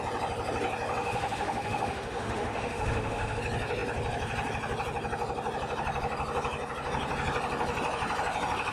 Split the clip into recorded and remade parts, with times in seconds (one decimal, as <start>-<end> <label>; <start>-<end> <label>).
0.0-1.0 recorded; 1.0-3.4 remade; 3.4-8.7 recorded